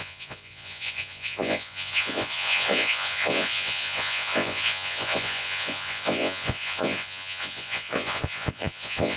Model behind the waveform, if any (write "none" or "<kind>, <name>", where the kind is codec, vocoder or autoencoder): vocoder, Vocos